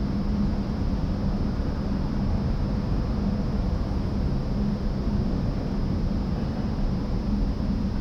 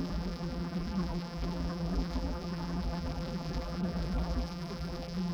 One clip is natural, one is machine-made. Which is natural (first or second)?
first